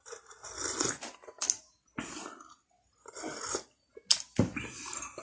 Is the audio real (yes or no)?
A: yes